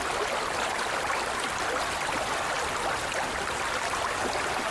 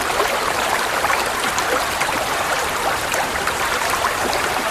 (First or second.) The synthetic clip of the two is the second